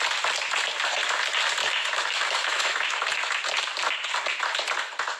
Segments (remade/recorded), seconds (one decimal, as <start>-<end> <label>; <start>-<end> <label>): 0.0-1.6 recorded; 1.6-2.9 remade; 2.9-5.2 recorded